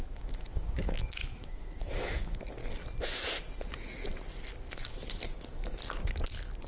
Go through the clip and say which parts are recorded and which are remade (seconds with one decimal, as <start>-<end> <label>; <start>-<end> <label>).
0.0-2.6 remade; 2.6-6.7 recorded